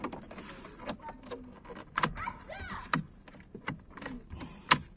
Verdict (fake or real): real